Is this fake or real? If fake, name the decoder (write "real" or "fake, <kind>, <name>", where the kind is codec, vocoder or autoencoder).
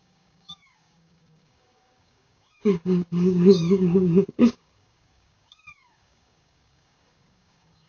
fake, codec, DAC